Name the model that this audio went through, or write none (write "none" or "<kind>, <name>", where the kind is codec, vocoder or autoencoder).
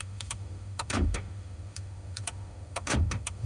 autoencoder, DAC-VAE